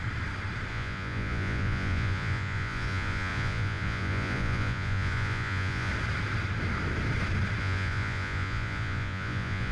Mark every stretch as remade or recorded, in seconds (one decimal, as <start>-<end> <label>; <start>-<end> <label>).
0.0-0.7 recorded; 0.7-5.9 remade; 5.9-7.6 recorded; 7.6-9.7 remade